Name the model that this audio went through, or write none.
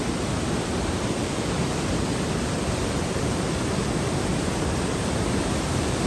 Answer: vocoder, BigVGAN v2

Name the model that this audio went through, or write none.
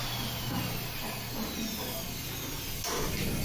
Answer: none